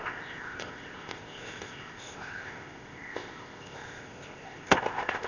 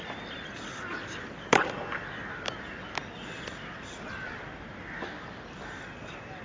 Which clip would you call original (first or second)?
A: second